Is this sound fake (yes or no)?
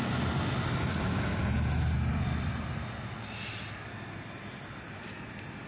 no